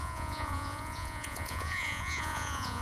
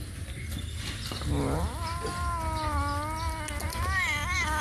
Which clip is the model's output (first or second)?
first